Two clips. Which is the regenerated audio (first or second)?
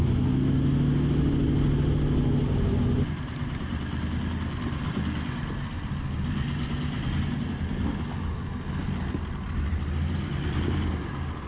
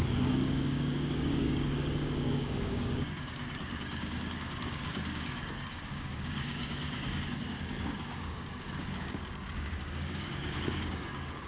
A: second